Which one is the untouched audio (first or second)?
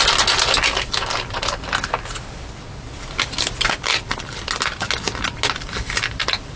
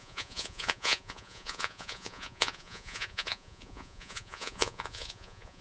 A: first